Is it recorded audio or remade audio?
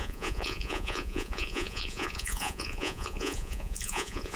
remade